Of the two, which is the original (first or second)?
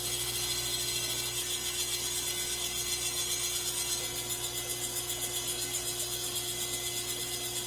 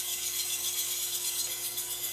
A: first